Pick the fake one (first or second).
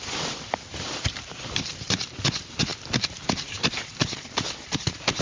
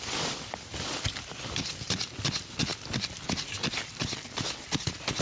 first